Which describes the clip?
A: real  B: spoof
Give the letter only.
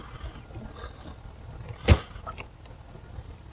A